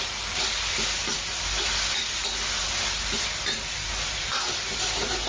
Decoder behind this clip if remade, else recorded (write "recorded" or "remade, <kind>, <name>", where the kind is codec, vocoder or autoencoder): recorded